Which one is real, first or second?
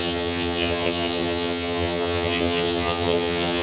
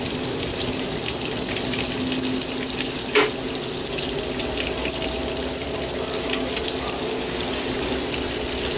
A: second